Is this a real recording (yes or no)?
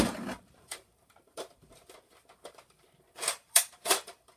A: no